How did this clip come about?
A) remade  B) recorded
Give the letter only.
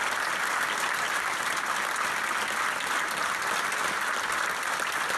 B